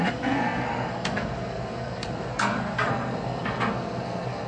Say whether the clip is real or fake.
fake